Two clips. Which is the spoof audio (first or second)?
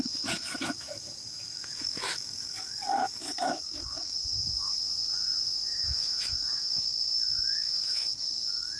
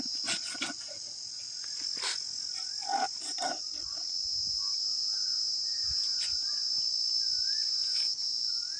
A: first